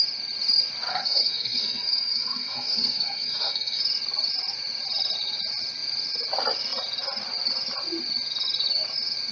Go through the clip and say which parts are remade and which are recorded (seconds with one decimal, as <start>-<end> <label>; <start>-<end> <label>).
0.0-0.9 recorded; 0.9-3.8 remade; 3.8-9.3 recorded